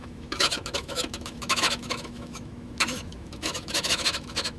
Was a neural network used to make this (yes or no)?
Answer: yes